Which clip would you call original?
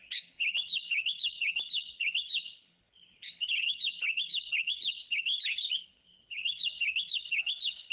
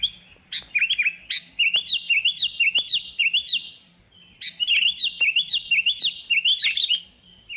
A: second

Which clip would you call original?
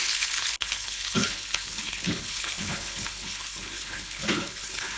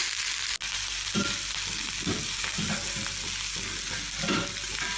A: second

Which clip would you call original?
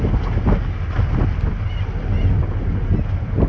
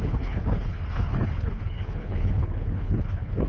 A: first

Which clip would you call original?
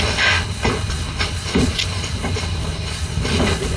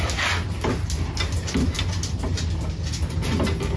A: second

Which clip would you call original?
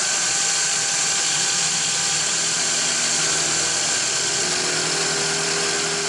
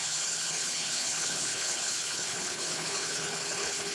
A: first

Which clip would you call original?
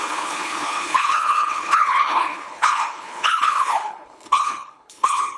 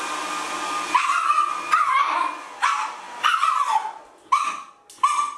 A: second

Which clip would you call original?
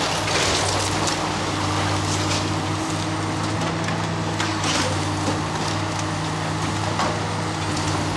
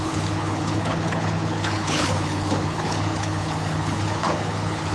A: first